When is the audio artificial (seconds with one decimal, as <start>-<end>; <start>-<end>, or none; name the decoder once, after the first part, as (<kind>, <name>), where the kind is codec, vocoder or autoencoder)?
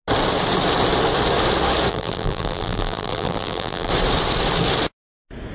1.9-3.9 (vocoder, BigVGAN v2)